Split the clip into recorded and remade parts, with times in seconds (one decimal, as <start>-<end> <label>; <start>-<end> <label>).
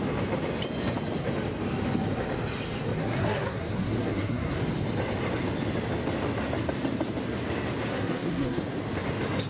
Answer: 0.0-3.0 recorded; 3.0-4.6 remade; 4.6-7.9 recorded; 7.9-8.6 remade; 8.6-9.5 recorded